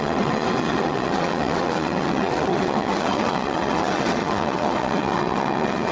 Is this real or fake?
fake